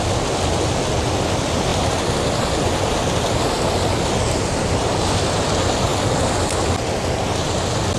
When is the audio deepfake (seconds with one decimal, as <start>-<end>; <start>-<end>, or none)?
none